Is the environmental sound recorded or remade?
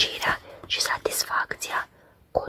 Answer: remade